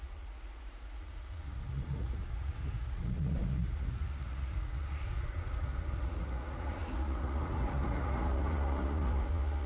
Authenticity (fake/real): fake